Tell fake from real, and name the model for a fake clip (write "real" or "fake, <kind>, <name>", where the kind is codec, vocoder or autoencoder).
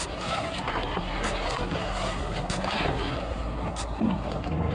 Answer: fake, codec, SNAC